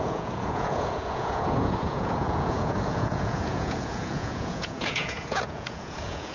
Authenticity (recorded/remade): remade